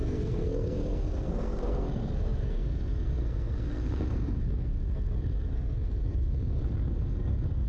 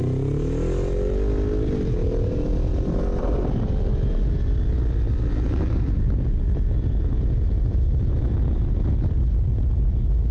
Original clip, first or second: second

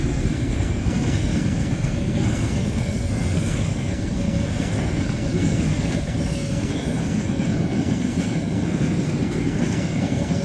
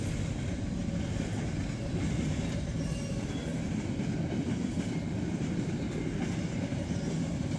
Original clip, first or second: second